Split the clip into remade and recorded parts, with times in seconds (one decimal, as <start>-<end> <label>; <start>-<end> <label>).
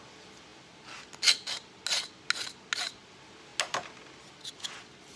0.0-5.2 recorded